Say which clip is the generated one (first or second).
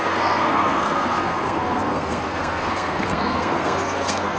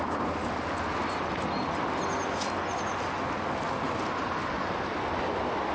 first